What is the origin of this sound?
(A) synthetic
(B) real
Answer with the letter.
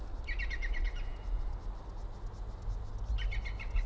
B